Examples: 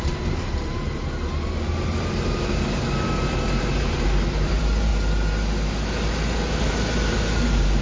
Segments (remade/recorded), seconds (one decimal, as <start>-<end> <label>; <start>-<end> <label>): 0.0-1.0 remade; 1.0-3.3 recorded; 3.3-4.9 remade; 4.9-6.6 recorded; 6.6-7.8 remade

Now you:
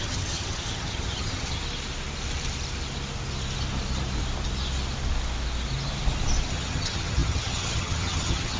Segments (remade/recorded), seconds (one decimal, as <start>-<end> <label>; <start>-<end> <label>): 0.0-1.6 remade; 1.6-6.5 recorded; 6.5-8.6 remade

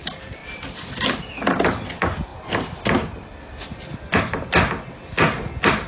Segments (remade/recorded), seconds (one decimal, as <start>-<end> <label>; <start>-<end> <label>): 0.0-5.9 recorded

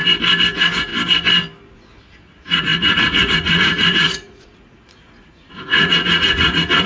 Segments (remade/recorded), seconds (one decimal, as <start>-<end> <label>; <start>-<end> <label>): 0.0-0.5 recorded; 0.5-0.9 remade; 0.9-1.7 recorded; 1.7-6.9 remade